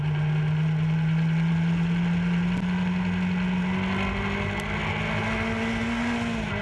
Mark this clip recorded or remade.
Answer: recorded